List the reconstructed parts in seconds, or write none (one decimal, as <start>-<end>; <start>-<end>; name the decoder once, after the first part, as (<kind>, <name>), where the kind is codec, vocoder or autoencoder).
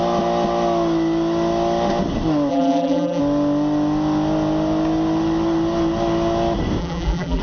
2.5-3.2 (vocoder, BigVGAN v2); 6.8-7.4